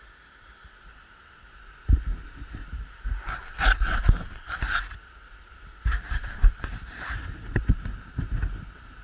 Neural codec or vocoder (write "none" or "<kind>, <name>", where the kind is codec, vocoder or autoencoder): none